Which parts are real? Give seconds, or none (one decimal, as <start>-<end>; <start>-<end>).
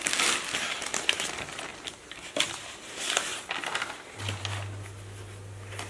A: 0.0-1.7; 2.9-5.9